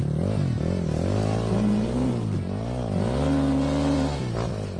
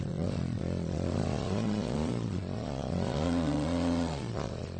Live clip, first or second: first